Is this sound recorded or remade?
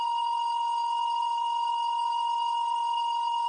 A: remade